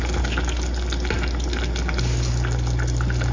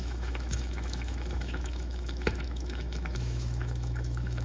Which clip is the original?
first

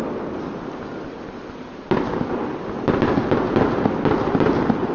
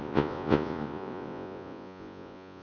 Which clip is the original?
first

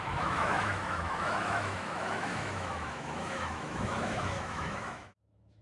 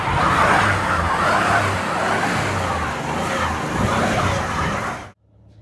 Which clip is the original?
second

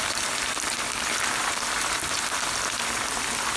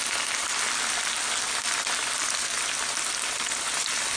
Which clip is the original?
second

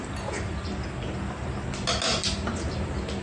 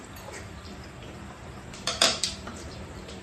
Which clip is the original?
first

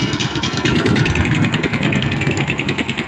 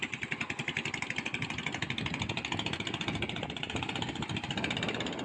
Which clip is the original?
second